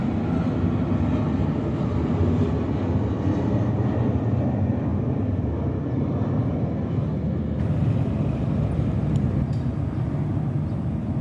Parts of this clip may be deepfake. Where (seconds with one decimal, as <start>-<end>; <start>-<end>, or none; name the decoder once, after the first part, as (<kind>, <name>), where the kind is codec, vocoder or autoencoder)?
none